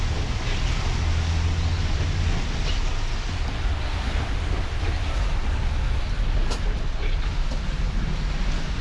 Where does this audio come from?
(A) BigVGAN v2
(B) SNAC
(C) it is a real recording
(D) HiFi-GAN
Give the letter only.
C